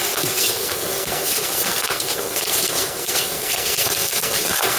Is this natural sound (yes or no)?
no